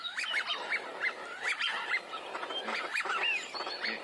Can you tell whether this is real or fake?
real